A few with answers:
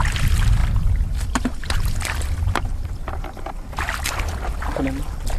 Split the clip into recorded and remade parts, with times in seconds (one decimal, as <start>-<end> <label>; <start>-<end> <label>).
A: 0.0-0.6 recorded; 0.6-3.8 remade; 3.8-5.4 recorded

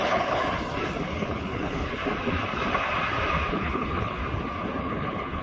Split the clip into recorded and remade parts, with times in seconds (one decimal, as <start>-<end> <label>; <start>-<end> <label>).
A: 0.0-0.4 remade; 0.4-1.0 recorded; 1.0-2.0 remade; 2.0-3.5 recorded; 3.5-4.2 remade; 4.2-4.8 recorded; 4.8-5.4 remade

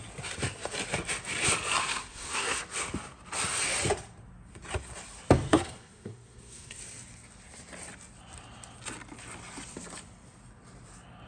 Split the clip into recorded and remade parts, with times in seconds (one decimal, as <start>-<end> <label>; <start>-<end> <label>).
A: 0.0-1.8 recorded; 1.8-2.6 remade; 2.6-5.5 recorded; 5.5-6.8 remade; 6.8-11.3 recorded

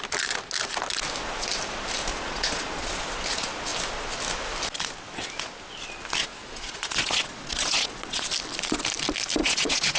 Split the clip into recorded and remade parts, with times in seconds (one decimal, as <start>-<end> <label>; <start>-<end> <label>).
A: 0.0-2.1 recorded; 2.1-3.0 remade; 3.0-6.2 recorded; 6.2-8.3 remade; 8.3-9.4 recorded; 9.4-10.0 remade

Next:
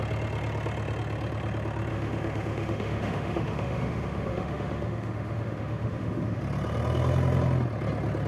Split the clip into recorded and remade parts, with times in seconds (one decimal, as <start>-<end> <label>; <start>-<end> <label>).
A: 0.0-1.9 recorded; 1.9-6.4 remade; 6.4-8.3 recorded